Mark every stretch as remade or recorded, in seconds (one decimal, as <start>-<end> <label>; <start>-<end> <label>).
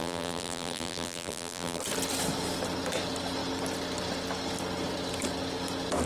0.0-1.8 remade; 1.8-6.1 recorded